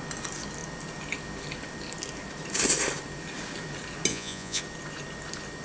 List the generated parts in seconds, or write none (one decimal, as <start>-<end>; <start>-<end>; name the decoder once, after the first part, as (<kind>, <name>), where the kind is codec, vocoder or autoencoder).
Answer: 4.1-4.6 (vocoder, Vocos)